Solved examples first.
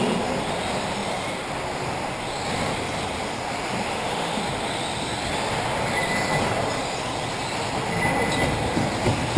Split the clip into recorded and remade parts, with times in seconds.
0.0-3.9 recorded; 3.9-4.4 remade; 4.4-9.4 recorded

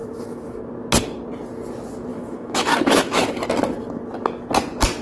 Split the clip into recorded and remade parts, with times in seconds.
0.0-0.6 remade; 0.6-2.1 recorded; 2.1-3.4 remade; 3.4-5.0 recorded